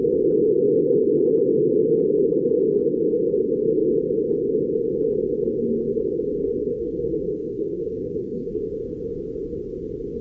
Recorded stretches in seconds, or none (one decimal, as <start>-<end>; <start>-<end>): 0.0-6.4; 8.6-10.2

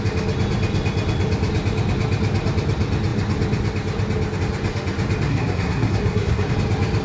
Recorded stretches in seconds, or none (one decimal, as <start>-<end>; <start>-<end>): 0.0-5.3; 6.5-7.0

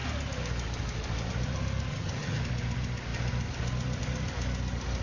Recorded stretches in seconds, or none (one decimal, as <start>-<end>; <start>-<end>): 0.0-1.9; 2.4-5.0

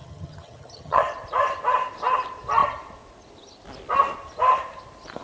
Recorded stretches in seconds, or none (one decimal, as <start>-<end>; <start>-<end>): 1.0-5.2

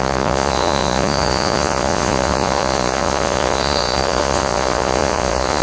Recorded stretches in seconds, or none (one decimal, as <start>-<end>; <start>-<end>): none

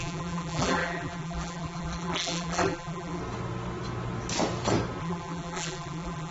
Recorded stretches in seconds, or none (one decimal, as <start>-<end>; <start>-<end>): 3.2-5.0

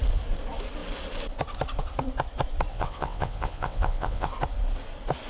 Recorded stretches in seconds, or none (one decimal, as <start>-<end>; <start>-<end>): 0.0-2.7; 4.3-5.3